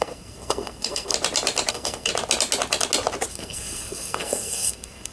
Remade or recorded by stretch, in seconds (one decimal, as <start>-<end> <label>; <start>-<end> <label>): 0.0-1.1 remade; 1.1-1.7 recorded; 1.7-2.1 remade; 2.1-3.3 recorded; 3.3-5.1 remade